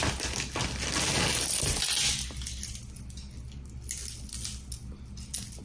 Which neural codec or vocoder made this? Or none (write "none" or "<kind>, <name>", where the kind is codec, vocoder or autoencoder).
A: none